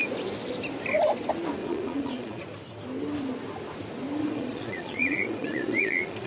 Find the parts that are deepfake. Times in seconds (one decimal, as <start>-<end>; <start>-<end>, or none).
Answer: 1.6-2.4; 4.2-6.3